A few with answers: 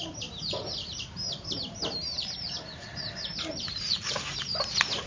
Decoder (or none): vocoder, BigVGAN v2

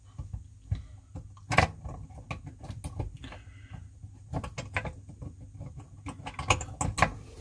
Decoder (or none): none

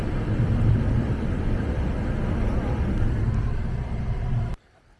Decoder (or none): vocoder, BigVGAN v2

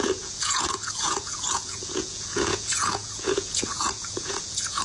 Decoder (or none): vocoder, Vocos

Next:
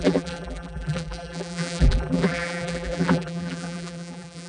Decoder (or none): vocoder, BigVGAN v2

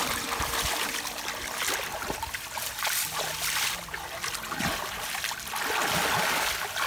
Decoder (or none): none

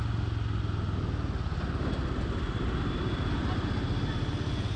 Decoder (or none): none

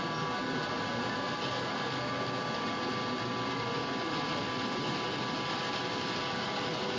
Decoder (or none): none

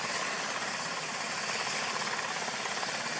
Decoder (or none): none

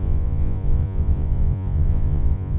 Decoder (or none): vocoder, Vocos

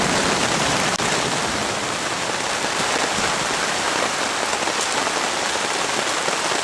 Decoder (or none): none